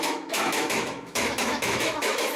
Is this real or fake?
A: fake